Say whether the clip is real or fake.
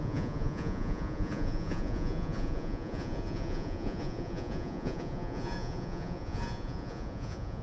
fake